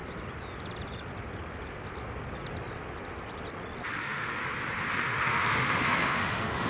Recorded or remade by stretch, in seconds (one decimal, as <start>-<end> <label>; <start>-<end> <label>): 0.0-4.0 recorded; 4.0-4.4 remade; 4.4-4.9 recorded; 4.9-6.7 remade